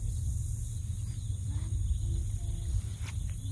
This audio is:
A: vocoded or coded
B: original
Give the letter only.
B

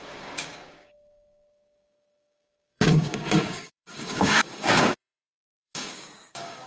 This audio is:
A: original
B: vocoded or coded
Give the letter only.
B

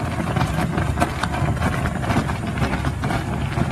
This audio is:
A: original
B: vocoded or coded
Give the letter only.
B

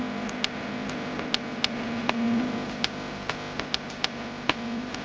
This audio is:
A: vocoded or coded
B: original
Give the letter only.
B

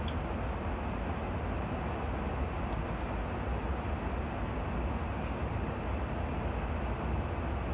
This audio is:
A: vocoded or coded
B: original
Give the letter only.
B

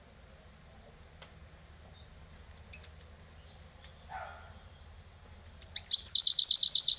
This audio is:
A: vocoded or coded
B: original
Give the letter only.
B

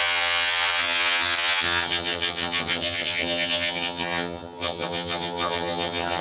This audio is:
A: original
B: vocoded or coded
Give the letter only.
B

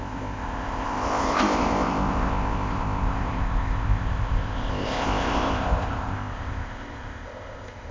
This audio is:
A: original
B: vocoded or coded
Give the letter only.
B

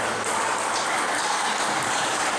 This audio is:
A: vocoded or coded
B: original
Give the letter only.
A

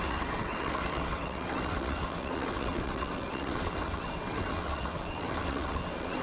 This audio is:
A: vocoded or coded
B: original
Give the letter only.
A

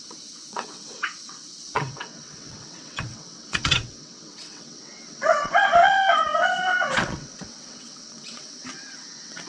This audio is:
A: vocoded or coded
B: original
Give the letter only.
A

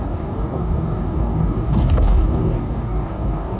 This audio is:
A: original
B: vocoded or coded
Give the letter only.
B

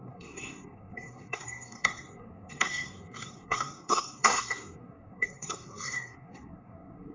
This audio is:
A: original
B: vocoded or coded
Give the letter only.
B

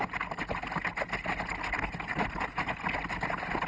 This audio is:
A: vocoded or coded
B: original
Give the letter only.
B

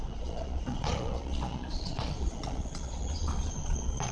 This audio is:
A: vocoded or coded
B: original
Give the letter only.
A